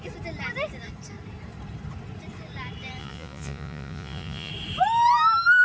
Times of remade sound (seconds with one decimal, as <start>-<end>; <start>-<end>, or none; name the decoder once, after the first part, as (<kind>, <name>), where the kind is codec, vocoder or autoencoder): 3.0-4.5 (vocoder, Vocos)

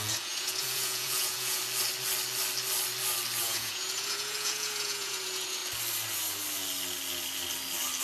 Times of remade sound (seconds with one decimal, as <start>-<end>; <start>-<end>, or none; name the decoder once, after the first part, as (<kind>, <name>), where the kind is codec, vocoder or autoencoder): 0.0-1.6 (vocoder, Vocos); 3.4-5.6

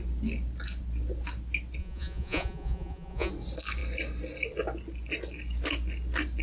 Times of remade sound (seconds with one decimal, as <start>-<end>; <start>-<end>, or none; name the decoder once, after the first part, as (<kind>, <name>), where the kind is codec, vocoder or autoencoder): 1.8-3.3 (vocoder, Vocos)